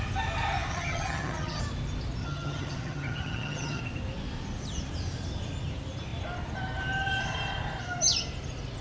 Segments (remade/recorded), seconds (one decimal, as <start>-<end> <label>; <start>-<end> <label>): 0.0-0.7 recorded; 0.7-1.6 remade; 1.6-2.2 recorded; 2.2-3.8 remade; 3.8-8.8 recorded